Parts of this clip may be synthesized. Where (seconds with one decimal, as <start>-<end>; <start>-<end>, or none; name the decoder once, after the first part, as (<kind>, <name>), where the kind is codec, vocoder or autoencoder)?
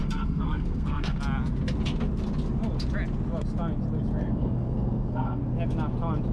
0.0-1.2 (codec, SNAC); 4.2-5.4